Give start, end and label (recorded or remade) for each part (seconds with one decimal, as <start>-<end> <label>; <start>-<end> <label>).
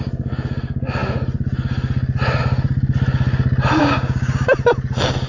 0.0-3.8 recorded; 3.8-4.5 remade; 4.5-5.3 recorded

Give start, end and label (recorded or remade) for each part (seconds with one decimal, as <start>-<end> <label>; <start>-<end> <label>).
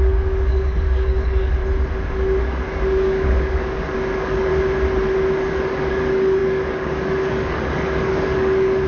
0.0-1.6 remade; 1.6-2.4 recorded; 2.4-4.5 remade; 4.5-5.5 recorded; 5.5-8.9 remade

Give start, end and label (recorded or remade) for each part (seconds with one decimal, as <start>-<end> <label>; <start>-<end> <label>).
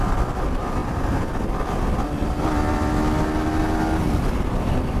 0.0-5.0 recorded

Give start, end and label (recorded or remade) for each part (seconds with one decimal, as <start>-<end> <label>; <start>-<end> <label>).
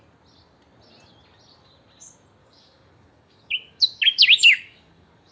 0.0-2.4 recorded; 2.4-5.3 remade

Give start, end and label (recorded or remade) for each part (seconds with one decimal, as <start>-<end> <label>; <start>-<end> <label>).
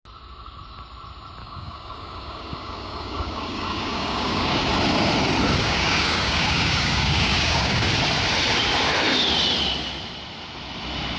0.0-1.4 recorded; 1.4-4.7 remade; 4.7-5.6 recorded; 5.6-7.9 remade; 7.9-11.2 recorded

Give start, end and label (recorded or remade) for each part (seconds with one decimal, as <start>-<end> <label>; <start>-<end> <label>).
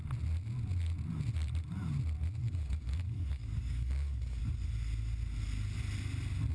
0.0-2.4 recorded; 2.4-4.4 remade; 4.4-6.5 recorded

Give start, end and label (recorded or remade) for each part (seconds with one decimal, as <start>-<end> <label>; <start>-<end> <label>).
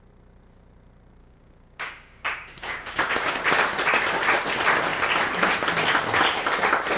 0.0-1.2 recorded; 1.2-3.4 remade; 3.4-7.0 recorded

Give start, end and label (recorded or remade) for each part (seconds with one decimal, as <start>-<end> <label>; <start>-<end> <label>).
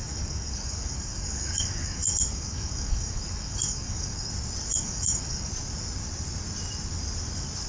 0.0-4.3 remade; 4.3-4.7 recorded; 4.7-5.5 remade; 5.5-7.7 recorded